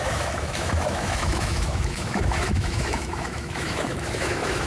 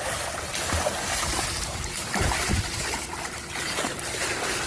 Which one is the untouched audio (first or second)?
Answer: second